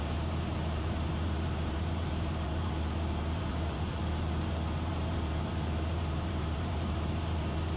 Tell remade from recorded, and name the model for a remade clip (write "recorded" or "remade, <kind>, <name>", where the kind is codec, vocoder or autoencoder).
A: remade, vocoder, BigVGAN v2